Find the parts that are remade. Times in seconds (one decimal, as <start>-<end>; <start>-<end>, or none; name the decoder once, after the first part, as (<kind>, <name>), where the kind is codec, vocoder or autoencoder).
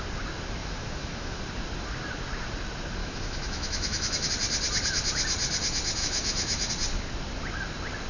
0.6-1.4 (autoencoder, DAC-VAE); 3.0-4.3; 6.0-6.7